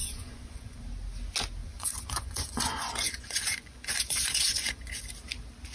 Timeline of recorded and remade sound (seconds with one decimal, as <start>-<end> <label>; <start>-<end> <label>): 0.0-0.8 remade; 0.8-1.6 recorded; 1.6-5.0 remade; 5.0-5.7 recorded

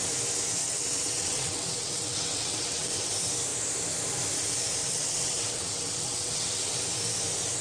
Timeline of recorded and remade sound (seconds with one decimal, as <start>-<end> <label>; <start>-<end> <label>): 0.0-0.6 recorded; 0.6-3.1 remade; 3.1-4.8 recorded; 4.8-6.8 remade; 6.8-7.6 recorded